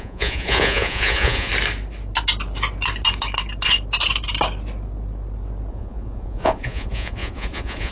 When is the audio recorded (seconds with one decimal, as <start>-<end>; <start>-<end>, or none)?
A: 1.5-5.7